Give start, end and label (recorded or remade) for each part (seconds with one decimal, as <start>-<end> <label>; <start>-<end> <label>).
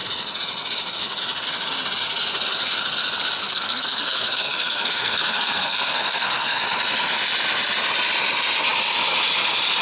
0.0-3.4 recorded; 3.4-6.6 remade; 6.6-9.8 recorded